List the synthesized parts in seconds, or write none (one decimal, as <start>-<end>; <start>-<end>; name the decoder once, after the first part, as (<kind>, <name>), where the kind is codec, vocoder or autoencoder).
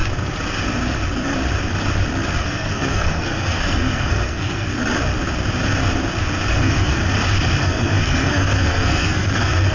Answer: 2.4-4.8 (codec, SNAC); 6.5-7.0; 7.6-9.7